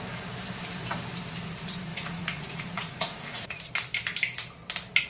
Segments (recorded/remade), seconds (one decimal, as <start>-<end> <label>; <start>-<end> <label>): 0.0-1.9 recorded; 1.9-3.7 remade; 3.7-5.1 recorded